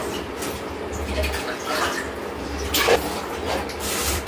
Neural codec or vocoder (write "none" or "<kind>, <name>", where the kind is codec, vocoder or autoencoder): vocoder, BigVGAN v2